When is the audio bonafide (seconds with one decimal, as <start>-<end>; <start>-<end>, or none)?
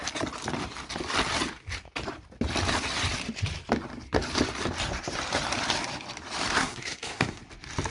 0.0-6.5; 7.4-7.9